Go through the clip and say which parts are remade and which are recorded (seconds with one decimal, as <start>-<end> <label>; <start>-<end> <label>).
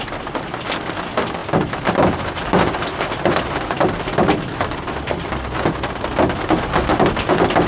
0.0-1.4 recorded; 1.4-5.3 remade; 5.3-7.7 recorded